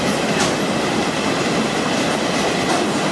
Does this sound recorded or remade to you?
remade